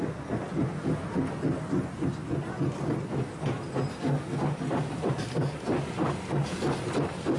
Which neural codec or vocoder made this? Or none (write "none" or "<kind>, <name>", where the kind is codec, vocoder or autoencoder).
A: none